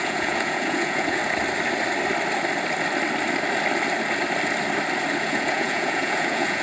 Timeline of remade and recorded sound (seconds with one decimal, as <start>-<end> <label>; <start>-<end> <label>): 0.0-1.2 remade; 1.2-5.2 recorded; 5.2-6.6 remade